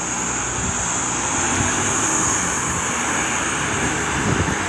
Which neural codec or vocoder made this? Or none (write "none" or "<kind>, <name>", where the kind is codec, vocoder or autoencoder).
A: none